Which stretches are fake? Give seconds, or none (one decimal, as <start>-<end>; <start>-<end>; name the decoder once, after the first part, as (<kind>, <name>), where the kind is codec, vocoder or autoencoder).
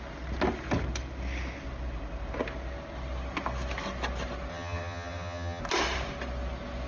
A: 4.5-5.6 (vocoder, HiFi-GAN)